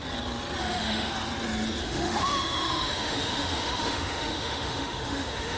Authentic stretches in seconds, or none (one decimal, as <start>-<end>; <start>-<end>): 0.0-0.6; 1.1-1.8